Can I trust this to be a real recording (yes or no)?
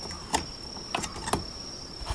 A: yes